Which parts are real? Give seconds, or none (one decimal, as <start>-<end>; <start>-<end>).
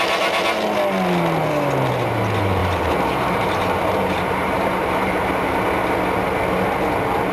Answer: 0.0-2.6; 5.3-7.3